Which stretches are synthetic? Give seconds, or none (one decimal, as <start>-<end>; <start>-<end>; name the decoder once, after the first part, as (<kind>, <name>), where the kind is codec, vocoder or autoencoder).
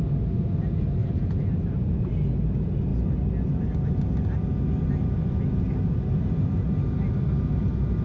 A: 1.0-2.0 (vocoder, BigVGAN v2)